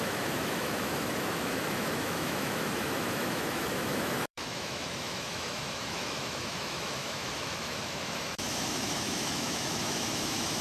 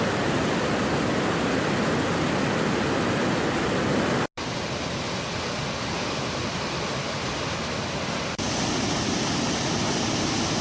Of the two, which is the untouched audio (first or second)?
second